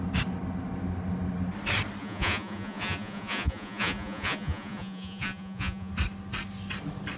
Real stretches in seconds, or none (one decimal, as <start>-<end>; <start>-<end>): 0.0-2.0; 5.9-7.2